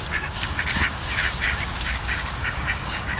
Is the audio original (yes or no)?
no